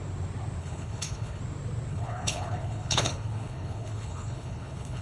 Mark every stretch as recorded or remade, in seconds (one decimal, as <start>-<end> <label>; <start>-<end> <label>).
0.0-0.6 recorded; 0.6-1.4 remade; 1.4-1.9 recorded; 1.9-5.0 remade